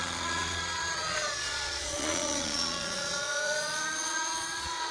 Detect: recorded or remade remade